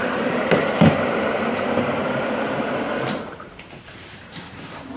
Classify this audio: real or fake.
fake